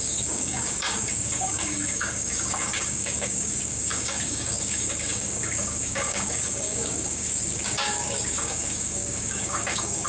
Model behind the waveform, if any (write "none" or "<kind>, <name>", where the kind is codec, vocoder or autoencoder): codec, DAC